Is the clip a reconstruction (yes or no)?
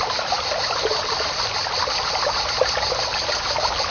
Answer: no